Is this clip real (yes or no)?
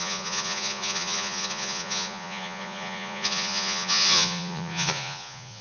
no